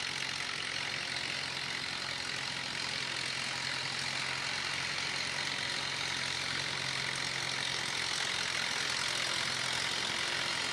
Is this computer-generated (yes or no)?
no